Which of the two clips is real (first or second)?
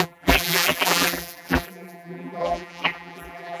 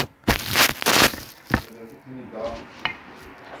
second